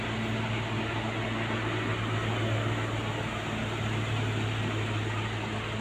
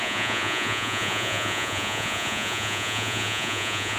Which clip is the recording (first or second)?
first